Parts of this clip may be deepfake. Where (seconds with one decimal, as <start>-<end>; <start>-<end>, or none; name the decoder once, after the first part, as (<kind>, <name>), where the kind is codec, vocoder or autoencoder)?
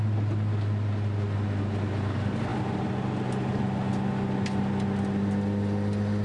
none